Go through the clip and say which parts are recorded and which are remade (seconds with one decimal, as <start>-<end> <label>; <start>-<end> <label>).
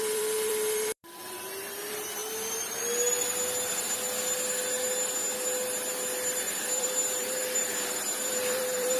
0.0-2.2 remade; 2.2-6.5 recorded; 6.5-9.0 remade